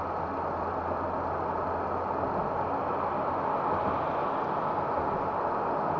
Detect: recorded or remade recorded